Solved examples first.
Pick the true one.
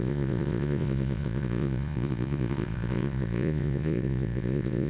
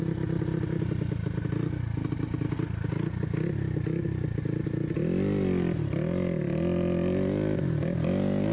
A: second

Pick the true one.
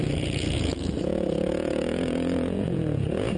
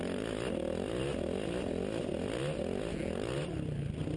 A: second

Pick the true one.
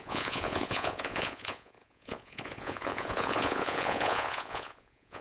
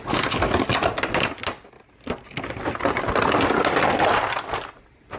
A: second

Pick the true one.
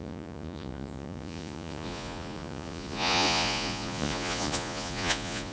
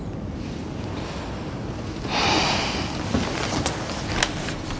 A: second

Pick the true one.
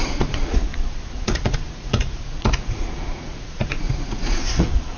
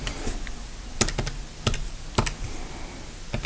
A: second